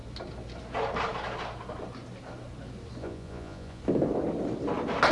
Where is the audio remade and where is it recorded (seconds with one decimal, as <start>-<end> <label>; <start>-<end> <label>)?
0.0-3.0 recorded; 3.0-3.8 remade; 3.8-5.1 recorded